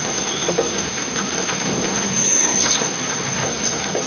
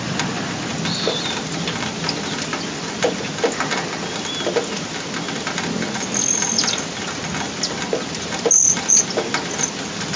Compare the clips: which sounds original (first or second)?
second